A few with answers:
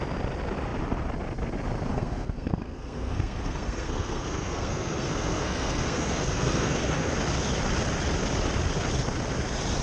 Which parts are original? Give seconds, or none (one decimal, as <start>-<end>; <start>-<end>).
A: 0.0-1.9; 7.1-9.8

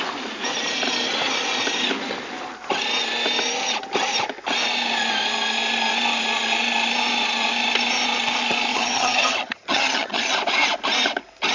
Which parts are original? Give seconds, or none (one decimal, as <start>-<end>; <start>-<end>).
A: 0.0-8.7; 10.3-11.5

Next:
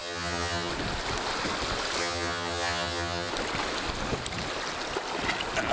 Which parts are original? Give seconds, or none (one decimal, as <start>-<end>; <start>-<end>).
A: 0.7-2.0; 3.3-5.7

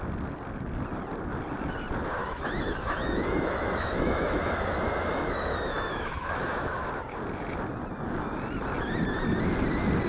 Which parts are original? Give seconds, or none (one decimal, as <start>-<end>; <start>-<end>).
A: 0.0-2.2; 6.8-10.1

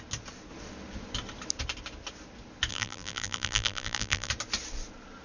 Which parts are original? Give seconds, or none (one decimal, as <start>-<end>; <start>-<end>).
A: 0.0-2.7; 4.3-5.2